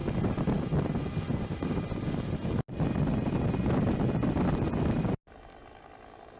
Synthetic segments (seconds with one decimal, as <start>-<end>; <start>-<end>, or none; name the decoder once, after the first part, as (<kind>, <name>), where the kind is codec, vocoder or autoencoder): none